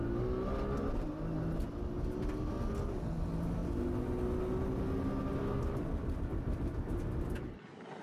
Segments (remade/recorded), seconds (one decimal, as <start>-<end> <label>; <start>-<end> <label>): 0.0-8.0 recorded